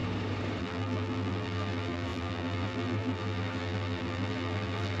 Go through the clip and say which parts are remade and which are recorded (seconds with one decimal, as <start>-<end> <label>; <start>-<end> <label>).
0.0-0.6 recorded; 0.6-5.0 remade